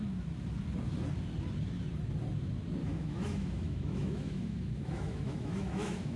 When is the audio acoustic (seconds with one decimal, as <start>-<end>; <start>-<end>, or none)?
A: 0.0-2.8